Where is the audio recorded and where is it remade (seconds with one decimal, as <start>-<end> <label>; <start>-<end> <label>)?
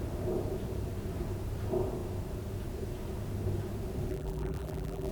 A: 0.0-4.1 recorded; 4.1-5.1 remade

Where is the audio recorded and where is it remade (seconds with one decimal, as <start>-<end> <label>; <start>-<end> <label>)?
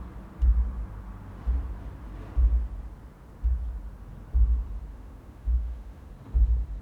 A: 0.0-4.9 recorded; 4.9-6.1 remade; 6.1-6.8 recorded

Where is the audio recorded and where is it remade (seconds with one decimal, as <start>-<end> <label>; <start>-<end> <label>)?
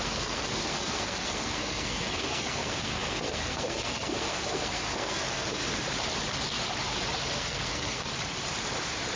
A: 0.0-5.6 remade; 5.6-7.3 recorded; 7.3-8.1 remade; 8.1-9.2 recorded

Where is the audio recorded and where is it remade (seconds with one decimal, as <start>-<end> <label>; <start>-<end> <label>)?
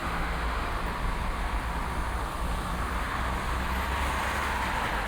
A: 0.0-0.7 remade; 0.7-5.1 recorded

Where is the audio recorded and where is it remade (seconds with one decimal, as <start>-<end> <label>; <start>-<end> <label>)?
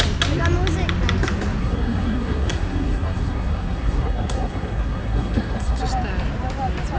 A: 0.0-1.6 recorded; 1.6-5.8 remade; 5.8-7.0 recorded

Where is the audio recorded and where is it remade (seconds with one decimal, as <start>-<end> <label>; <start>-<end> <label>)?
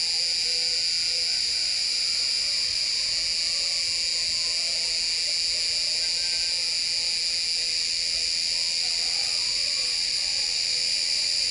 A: 0.0-1.3 recorded; 1.3-3.1 remade; 3.1-9.2 recorded; 9.2-11.5 remade